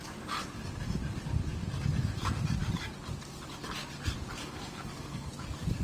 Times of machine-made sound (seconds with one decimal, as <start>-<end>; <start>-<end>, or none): 4.4-5.3